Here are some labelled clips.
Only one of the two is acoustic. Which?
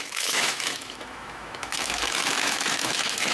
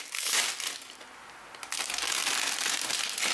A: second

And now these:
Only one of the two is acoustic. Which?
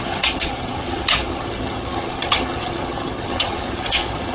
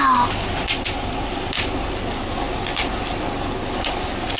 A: second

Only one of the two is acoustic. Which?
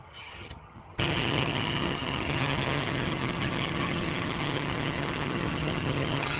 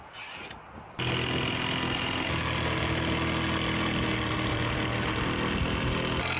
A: second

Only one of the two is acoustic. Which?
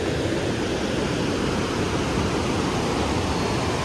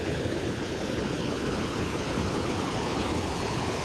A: first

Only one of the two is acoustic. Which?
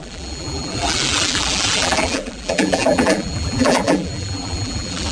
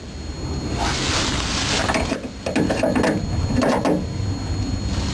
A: second